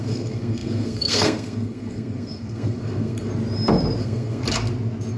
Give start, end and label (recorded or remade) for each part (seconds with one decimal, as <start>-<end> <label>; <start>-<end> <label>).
0.0-3.3 remade; 3.3-4.0 recorded; 4.0-4.4 remade; 4.4-5.2 recorded